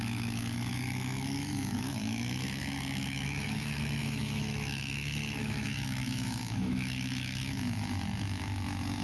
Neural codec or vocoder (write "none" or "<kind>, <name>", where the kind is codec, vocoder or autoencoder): autoencoder, DAC-VAE